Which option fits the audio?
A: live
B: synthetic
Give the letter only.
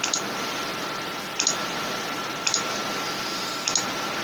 A